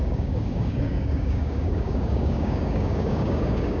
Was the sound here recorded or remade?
remade